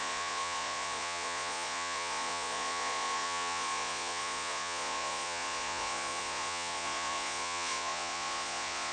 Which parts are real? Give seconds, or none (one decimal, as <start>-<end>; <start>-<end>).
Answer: none